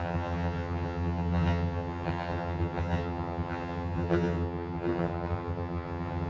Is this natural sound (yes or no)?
no